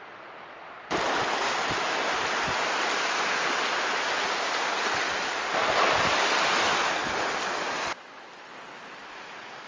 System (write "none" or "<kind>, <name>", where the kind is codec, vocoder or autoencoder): none